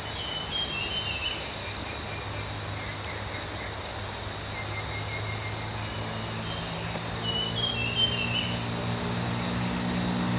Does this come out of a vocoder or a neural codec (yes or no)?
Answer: no